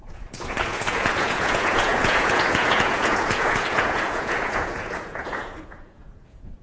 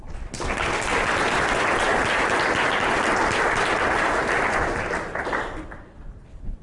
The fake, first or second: first